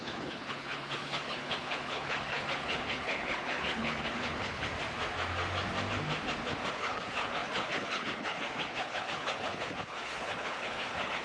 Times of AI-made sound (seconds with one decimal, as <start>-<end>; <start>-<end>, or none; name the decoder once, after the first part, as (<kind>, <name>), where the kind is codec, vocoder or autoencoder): 0.0-4.7 (codec, HILCodec); 6.7-11.2